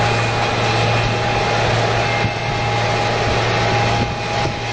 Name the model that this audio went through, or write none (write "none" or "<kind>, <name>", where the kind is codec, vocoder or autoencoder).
none